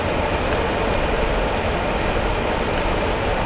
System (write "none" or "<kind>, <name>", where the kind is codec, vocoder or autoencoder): none